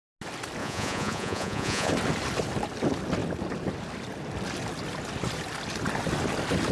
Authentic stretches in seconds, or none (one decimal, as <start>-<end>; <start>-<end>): 0.0-0.6; 1.9-6.7